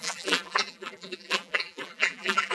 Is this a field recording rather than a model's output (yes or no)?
no